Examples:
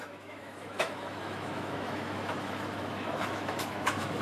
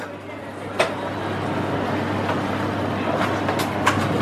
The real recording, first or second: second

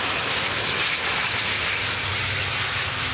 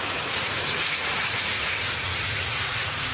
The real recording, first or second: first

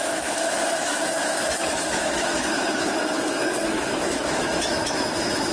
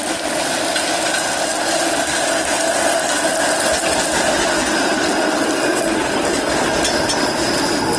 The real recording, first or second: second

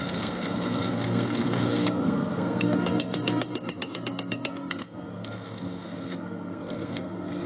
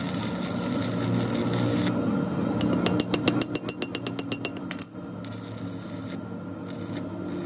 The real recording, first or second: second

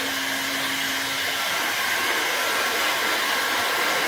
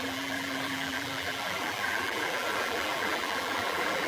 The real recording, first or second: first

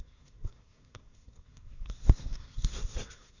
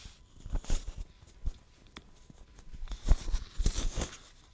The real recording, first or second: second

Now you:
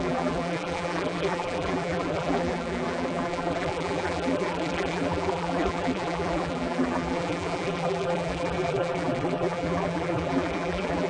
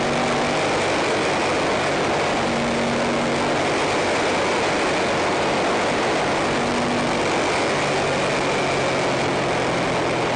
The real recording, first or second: second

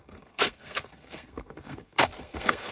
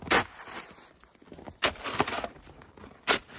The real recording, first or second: second